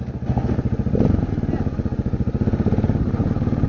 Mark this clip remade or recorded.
recorded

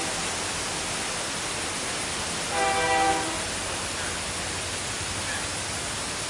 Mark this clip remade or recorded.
recorded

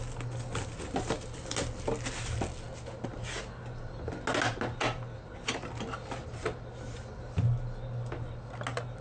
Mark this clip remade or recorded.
recorded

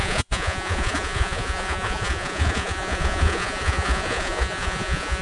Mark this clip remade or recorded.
remade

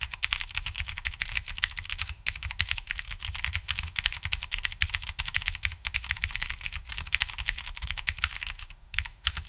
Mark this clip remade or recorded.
remade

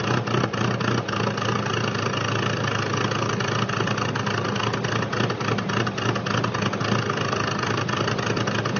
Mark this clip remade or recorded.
recorded